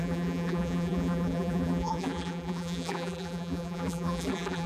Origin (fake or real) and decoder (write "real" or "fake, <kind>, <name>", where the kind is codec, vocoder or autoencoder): fake, vocoder, BigVGAN v2